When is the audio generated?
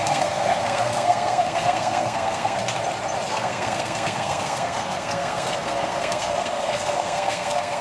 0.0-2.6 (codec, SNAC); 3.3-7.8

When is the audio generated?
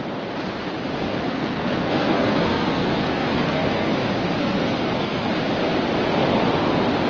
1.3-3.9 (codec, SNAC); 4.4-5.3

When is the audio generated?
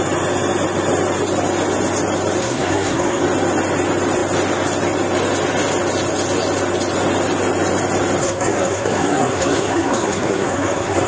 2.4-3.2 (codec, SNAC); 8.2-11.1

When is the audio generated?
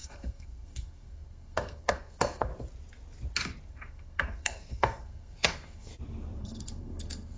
0.0-2.5 (codec, SNAC); 3.7-5.9; 6.4-7.4